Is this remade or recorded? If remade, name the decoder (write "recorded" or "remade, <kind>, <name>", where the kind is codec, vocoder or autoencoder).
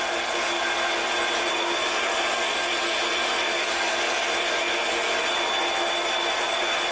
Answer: recorded